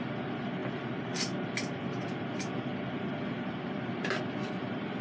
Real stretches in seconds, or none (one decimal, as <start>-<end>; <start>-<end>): 0.0-5.0